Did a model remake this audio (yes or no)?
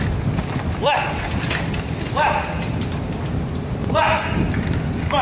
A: no